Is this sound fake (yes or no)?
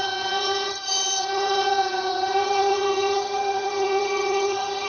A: yes